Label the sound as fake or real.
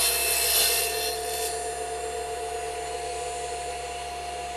real